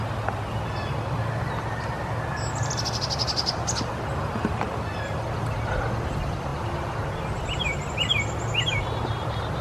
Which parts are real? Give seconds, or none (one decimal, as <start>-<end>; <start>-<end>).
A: 0.0-9.6